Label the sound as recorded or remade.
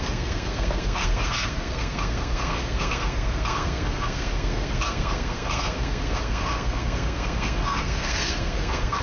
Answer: remade